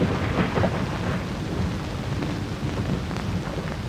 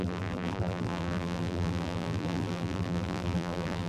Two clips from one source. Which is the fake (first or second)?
second